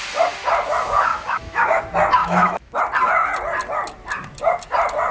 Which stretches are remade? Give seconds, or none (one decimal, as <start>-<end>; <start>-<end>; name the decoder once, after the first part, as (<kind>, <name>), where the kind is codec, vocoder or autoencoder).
1.1-1.8 (autoencoder, DAC-VAE); 2.2-2.8